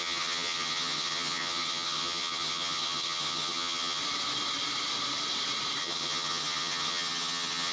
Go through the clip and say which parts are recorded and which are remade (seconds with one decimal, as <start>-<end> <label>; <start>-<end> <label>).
0.0-4.0 remade; 4.0-5.8 recorded; 5.8-7.7 remade